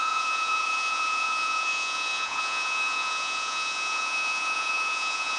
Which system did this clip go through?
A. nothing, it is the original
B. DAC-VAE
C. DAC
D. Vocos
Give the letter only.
D